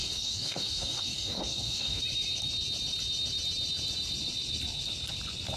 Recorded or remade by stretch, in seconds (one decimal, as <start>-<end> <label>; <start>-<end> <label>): 0.0-2.0 remade; 2.0-5.6 recorded